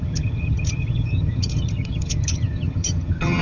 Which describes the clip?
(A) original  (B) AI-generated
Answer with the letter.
B